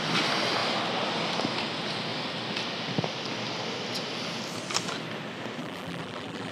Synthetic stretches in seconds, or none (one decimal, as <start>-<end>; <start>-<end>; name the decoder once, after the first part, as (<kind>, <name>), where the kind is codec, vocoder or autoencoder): 5.6-6.5 (vocoder, BigVGAN v2)